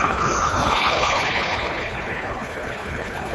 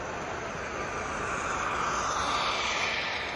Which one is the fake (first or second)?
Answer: first